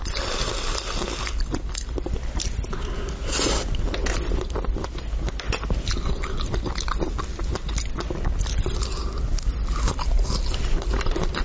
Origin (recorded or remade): recorded